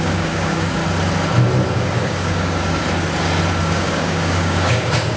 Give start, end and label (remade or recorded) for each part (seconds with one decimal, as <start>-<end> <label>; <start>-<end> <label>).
0.0-0.8 remade; 0.8-1.7 recorded; 1.7-2.8 remade; 2.8-3.6 recorded; 3.6-5.2 remade